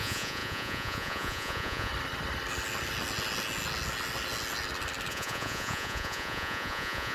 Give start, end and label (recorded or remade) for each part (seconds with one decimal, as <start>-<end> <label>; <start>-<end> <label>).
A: 0.0-1.9 remade; 1.9-5.1 recorded; 5.1-7.1 remade